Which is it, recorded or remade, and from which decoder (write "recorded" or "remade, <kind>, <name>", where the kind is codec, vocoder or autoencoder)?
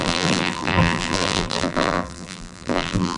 remade, vocoder, BigVGAN v2